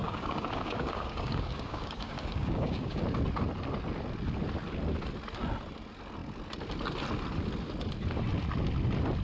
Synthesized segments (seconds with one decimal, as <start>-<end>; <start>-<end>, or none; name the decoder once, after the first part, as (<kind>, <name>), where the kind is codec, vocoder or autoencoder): 0.0-3.0 (codec, DAC)